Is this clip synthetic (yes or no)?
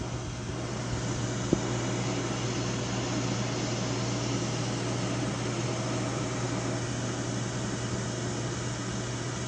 no